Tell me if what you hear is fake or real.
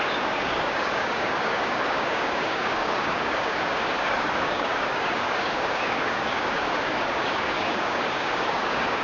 fake